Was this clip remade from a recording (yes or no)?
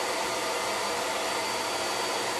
no